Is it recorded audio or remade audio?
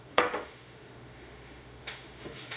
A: remade